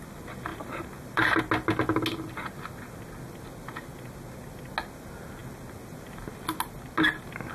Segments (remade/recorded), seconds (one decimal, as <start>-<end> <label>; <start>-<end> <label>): 0.0-0.5 recorded; 0.5-1.4 remade; 1.4-7.5 recorded